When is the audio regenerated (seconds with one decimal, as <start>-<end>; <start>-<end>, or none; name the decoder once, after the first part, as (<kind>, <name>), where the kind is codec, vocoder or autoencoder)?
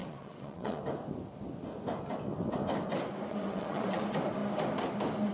0.0-0.8 (vocoder, WaveNeXt); 3.3-4.0